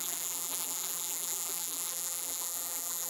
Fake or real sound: fake